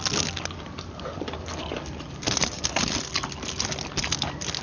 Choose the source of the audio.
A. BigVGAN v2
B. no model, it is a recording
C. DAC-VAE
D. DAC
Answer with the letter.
B